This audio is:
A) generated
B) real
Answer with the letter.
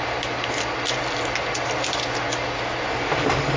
B